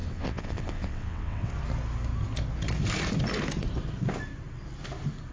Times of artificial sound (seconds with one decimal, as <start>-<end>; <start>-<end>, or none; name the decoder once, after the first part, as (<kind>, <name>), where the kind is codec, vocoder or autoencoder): 0.0-1.5 (vocoder, WaveNeXt)